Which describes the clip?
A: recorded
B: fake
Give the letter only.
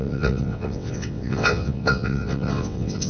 B